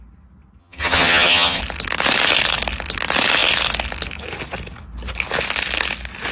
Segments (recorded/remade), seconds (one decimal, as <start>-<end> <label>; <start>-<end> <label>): 0.0-0.6 recorded; 0.6-1.6 remade; 1.6-6.3 recorded